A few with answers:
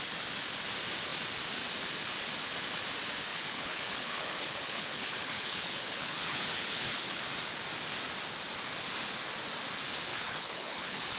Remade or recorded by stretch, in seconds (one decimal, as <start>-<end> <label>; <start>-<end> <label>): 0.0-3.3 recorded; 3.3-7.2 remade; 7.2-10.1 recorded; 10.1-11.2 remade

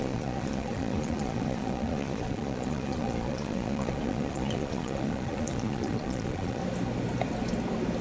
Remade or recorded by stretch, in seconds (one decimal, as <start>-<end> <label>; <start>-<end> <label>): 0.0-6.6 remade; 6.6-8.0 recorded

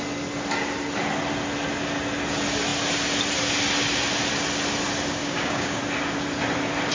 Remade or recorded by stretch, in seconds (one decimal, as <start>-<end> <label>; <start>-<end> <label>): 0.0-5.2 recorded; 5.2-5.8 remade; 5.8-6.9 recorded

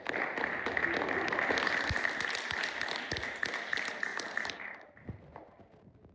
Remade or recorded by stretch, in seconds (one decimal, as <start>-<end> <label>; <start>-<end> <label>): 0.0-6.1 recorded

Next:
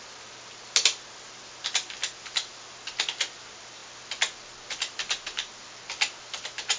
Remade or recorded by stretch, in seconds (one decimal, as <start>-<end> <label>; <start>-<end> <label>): 0.0-6.8 recorded